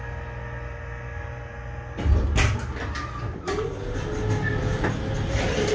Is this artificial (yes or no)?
no